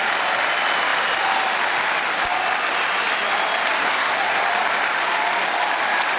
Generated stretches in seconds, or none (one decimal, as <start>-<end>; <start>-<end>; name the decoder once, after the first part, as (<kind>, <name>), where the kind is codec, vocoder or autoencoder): 3.8-4.4 (codec, SNAC)